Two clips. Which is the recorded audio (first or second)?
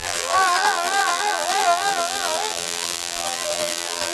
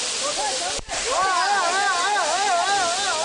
second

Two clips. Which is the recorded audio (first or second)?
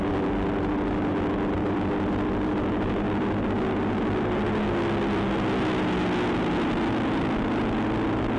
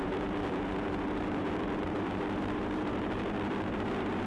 first